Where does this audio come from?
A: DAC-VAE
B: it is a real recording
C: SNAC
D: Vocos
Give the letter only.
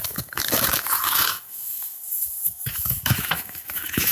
A